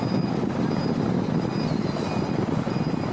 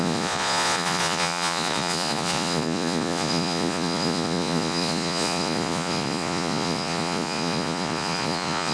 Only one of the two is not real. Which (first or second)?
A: second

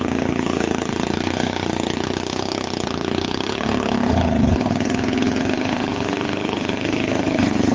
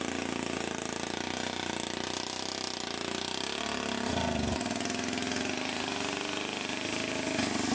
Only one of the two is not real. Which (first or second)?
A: first